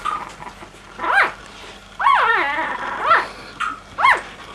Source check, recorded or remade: recorded